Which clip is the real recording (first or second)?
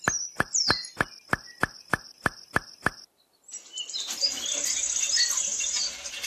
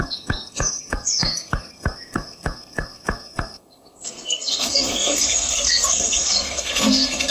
first